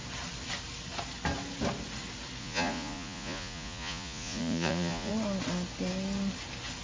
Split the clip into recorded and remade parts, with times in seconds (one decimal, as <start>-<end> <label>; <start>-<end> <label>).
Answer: 0.0-2.4 recorded; 2.4-5.1 remade; 5.1-6.8 recorded